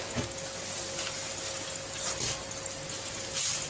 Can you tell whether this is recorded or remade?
recorded